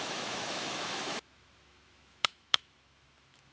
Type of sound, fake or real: fake